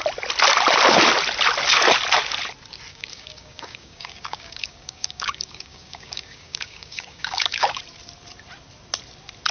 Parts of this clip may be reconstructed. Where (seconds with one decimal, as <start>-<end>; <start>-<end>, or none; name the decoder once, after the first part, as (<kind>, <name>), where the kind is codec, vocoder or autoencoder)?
2.9-7.8 (codec, DAC)